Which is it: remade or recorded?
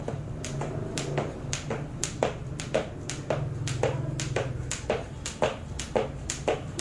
recorded